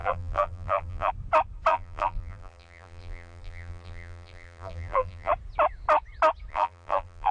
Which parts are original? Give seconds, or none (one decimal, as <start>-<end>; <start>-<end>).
1.1-1.7; 5.3-6.5